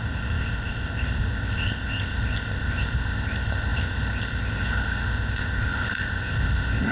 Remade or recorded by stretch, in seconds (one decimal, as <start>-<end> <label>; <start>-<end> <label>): 0.0-6.9 remade